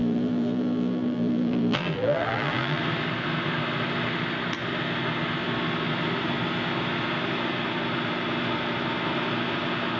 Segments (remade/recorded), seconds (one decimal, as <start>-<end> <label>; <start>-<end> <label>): 0.0-2.8 remade; 2.8-10.0 recorded